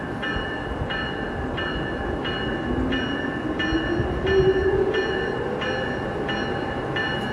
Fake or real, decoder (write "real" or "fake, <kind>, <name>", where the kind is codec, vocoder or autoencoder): real